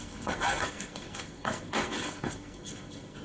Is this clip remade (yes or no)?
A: yes